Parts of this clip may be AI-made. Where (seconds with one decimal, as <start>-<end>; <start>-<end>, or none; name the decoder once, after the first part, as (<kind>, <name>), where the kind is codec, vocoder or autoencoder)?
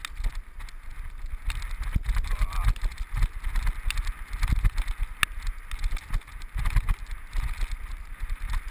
none